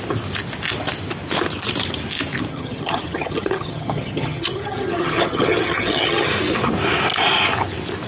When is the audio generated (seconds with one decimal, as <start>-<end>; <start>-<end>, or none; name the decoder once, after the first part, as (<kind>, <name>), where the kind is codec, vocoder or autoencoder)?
2.5-6.3 (vocoder, HiFi-GAN)